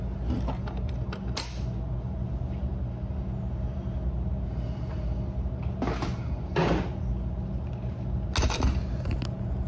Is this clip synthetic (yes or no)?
no